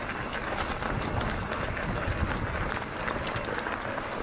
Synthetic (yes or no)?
no